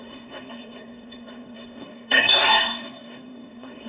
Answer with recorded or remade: remade